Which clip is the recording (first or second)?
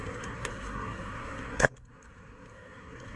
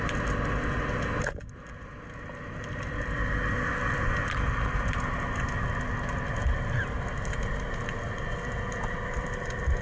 second